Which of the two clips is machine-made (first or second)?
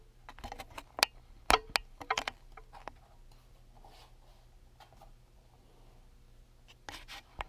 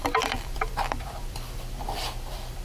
second